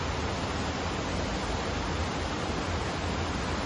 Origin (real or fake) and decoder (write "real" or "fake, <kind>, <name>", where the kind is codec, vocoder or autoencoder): real